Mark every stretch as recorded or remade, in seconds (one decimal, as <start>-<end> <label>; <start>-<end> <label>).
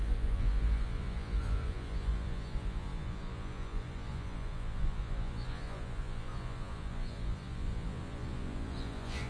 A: 0.0-9.3 remade